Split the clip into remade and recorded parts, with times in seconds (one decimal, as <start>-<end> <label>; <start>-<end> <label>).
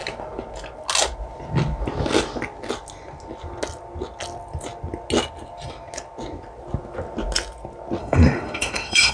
0.0-8.0 recorded; 8.0-9.1 remade